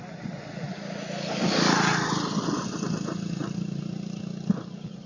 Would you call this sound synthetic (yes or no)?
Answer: no